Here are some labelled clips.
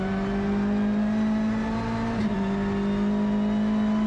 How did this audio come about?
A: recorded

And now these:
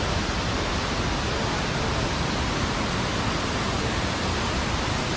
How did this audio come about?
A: recorded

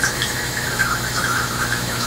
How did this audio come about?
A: remade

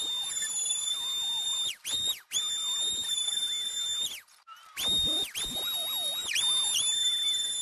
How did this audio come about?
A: recorded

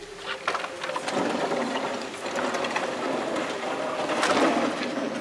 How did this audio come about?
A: recorded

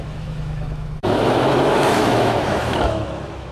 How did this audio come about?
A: remade